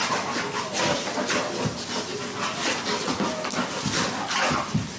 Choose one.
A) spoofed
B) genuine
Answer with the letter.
B